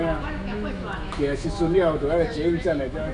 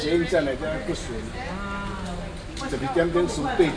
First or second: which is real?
second